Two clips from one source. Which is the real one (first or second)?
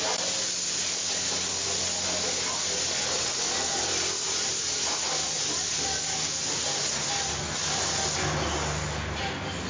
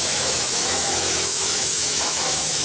first